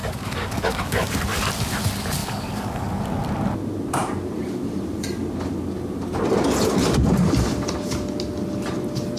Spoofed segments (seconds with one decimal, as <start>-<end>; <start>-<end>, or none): 0.0-1.2; 2.2-3.0